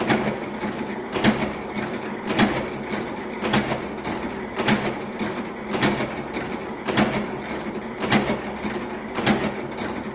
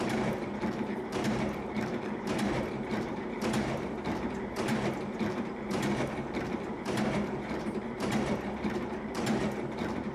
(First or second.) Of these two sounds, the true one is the first